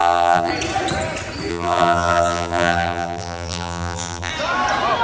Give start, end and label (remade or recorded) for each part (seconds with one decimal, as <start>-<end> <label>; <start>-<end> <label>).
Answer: 0.0-0.5 remade; 0.5-1.5 recorded; 1.5-4.3 remade; 4.3-5.0 recorded